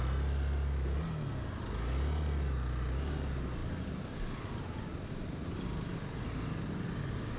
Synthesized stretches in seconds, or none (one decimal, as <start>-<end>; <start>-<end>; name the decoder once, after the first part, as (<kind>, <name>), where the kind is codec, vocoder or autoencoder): none